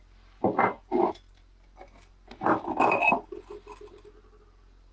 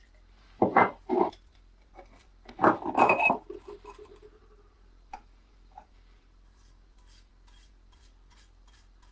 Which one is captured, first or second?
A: first